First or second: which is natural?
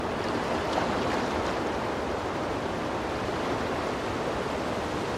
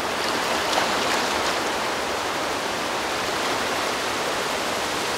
first